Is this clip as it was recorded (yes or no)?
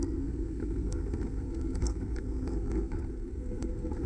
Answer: no